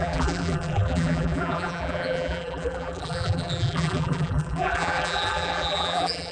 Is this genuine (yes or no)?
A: no